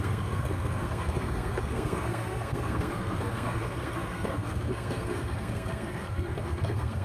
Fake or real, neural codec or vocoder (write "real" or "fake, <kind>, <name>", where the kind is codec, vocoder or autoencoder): fake, codec, SNAC